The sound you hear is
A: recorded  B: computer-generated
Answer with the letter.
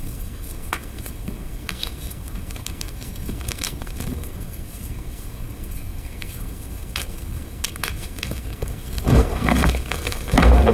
B